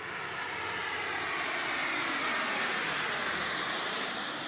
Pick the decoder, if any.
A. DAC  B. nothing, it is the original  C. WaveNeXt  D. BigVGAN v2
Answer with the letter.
B